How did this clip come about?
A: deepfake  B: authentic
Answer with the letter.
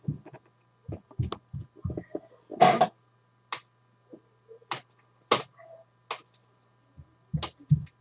B